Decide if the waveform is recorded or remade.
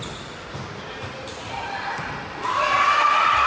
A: recorded